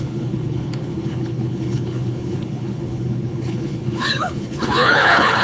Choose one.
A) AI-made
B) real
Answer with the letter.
A